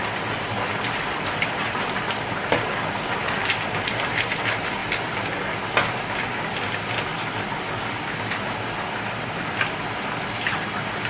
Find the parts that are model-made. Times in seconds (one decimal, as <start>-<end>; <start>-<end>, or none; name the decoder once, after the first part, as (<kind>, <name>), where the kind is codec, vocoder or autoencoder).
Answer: none